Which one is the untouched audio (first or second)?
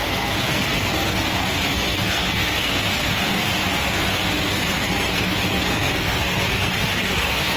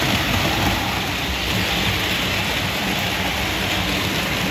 second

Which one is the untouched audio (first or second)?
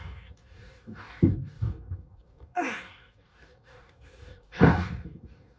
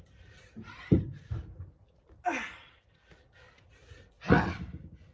second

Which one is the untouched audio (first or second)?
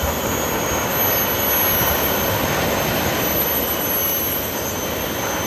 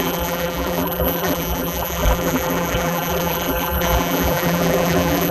first